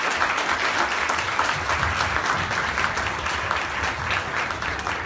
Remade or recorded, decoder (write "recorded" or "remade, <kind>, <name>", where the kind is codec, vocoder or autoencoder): recorded